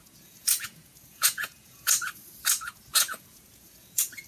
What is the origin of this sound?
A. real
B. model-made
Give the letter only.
B